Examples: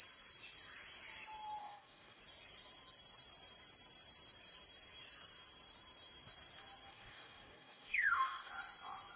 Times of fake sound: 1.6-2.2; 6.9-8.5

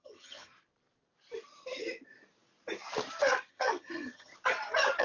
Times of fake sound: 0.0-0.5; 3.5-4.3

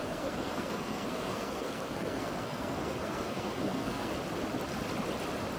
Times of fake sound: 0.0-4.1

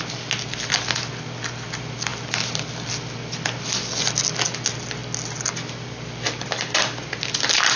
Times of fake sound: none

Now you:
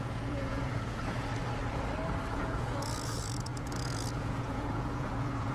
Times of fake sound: 0.0-1.3; 2.3-5.5

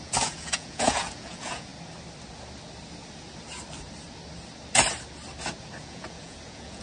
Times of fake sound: 0.0-1.7; 5.8-6.8

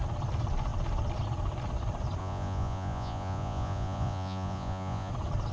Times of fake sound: 2.2-5.1

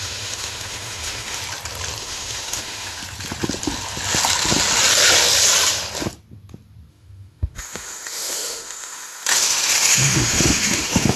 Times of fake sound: 0.0-1.4; 2.0-3.0; 6.9-11.2